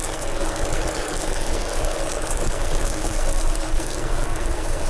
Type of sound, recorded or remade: remade